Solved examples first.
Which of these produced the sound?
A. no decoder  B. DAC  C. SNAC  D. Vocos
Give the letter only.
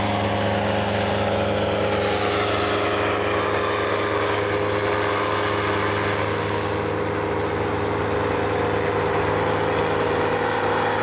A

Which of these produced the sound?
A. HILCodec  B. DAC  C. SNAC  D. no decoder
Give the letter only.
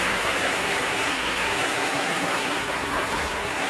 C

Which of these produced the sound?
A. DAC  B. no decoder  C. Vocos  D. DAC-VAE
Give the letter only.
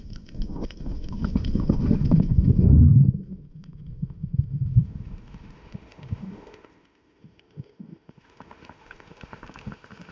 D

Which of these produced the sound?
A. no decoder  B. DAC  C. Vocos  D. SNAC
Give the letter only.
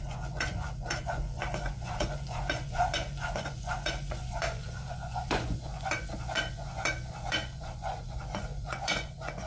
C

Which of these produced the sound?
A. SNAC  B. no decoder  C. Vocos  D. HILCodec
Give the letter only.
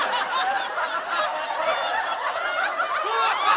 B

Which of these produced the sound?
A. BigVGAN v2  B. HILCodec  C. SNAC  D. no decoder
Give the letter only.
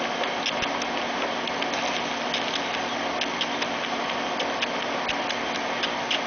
D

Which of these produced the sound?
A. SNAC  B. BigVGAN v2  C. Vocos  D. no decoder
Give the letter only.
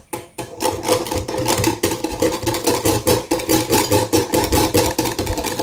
D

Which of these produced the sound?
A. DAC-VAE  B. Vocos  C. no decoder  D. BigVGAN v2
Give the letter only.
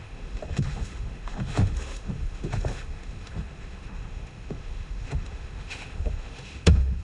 A